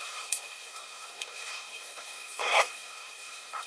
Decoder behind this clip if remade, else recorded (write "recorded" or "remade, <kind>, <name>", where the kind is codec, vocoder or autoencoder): remade, codec, SNAC